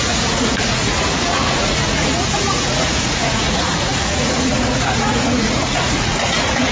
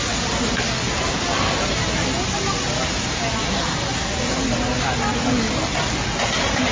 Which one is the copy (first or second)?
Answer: first